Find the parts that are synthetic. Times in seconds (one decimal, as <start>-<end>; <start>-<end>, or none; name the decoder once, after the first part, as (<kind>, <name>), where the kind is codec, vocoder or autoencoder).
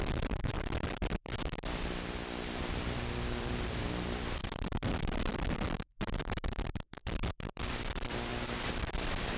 0.0-8.3 (vocoder, BigVGAN v2); 8.8-9.4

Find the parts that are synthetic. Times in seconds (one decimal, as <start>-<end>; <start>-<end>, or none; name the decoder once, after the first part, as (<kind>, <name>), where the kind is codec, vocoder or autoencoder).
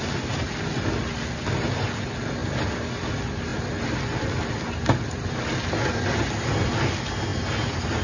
none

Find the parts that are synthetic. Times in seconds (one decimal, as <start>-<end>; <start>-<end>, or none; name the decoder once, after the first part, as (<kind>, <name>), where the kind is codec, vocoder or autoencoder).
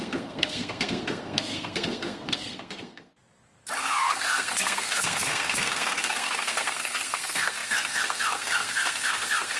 0.0-3.1 (codec, SNAC); 3.8-9.6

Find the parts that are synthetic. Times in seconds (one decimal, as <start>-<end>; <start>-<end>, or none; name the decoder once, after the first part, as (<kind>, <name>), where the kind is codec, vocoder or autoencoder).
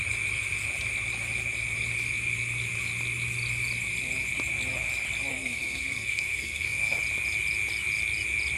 5.3-7.0 (codec, SNAC)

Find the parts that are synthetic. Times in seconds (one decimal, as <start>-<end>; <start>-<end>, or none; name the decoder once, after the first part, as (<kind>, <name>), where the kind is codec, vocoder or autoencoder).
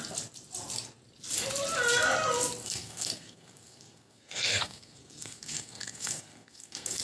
2.6-7.0 (codec, SNAC)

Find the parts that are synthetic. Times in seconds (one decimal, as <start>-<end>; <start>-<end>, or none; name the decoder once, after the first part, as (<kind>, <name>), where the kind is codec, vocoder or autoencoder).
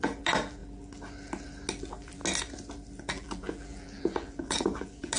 0.0-0.6 (vocoder, BigVGAN v2); 1.8-2.2; 3.1-5.2